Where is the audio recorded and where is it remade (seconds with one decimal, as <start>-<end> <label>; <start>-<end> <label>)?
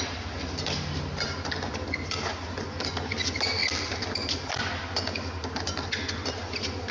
0.0-6.9 recorded